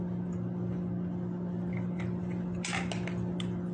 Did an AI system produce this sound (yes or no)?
no